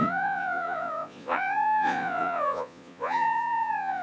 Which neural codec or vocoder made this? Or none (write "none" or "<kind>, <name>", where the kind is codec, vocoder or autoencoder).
vocoder, Vocos